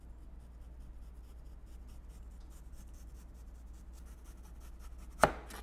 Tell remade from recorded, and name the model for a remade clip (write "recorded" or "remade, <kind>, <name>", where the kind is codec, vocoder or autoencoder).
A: recorded